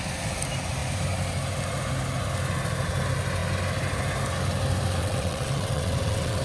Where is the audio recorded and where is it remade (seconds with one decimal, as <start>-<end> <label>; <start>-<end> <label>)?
0.0-5.0 recorded; 5.0-6.4 remade